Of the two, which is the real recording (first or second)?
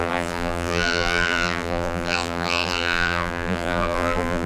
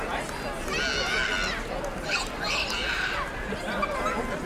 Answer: second